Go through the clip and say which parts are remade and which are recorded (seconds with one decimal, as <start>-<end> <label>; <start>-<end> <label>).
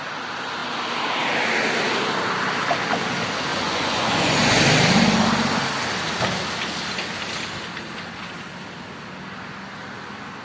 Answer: 0.0-3.5 recorded; 3.5-4.6 remade; 4.6-10.4 recorded